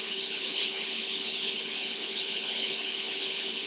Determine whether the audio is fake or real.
fake